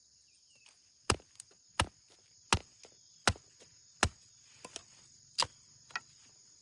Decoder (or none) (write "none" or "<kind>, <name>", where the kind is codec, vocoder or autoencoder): none